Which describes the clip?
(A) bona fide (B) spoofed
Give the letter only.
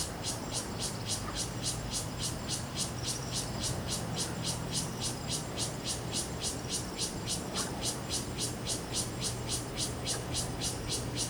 B